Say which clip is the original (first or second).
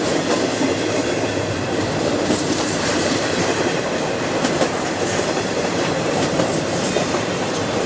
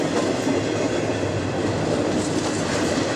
second